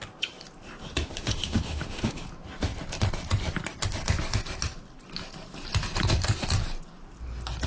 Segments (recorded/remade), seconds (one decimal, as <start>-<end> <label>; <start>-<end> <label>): 0.0-1.1 recorded; 1.1-2.2 remade; 2.2-7.7 recorded